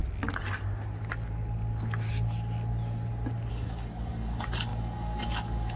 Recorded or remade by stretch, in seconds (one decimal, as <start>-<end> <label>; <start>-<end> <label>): 0.0-3.5 recorded; 3.5-5.8 remade